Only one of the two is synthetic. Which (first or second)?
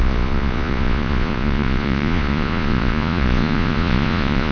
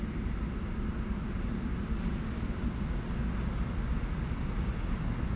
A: first